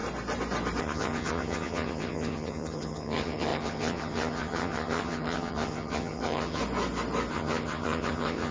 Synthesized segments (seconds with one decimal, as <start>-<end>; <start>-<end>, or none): 0.8-6.6; 7.3-8.5